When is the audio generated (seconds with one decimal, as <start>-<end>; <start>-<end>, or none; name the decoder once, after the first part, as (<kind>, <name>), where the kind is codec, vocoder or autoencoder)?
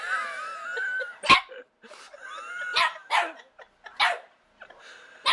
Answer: none